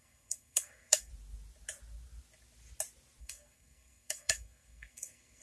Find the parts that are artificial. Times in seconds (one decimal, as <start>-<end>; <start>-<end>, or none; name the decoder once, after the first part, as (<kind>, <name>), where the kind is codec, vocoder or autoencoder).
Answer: 0.0-1.1 (codec, SNAC); 3.2-5.4